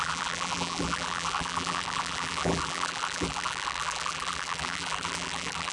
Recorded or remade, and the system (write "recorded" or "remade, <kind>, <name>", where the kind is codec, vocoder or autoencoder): remade, vocoder, BigVGAN v2